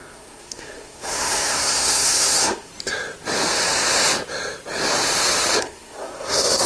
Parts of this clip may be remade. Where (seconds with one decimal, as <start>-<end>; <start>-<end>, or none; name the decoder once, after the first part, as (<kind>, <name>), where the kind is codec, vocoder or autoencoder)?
0.0-2.7 (codec, SNAC); 5.6-6.7